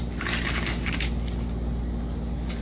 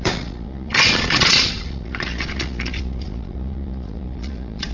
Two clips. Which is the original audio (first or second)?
first